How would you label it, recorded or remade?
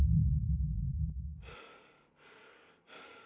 recorded